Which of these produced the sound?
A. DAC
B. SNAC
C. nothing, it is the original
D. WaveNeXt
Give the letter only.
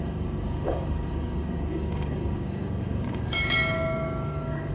A